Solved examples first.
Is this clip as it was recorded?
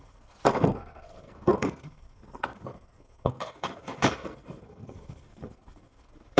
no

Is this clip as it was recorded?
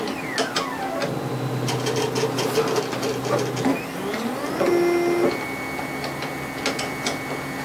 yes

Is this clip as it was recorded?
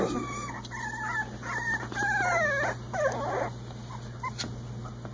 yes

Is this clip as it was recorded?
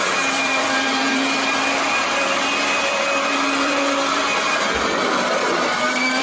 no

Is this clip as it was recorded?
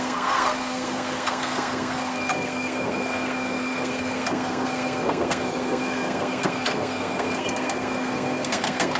no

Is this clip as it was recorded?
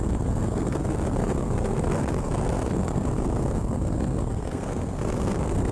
no